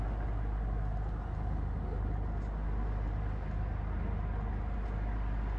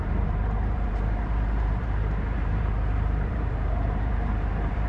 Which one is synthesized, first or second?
second